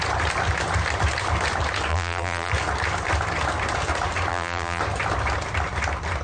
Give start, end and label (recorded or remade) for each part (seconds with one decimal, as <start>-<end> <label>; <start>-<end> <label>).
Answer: 0.0-1.9 recorded; 1.9-2.5 remade; 2.5-4.3 recorded; 4.3-4.8 remade; 4.8-6.2 recorded